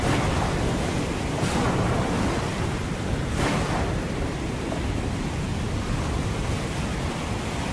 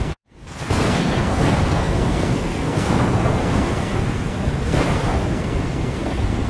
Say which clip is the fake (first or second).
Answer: second